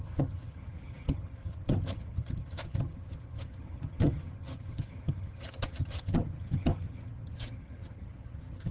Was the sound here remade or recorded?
remade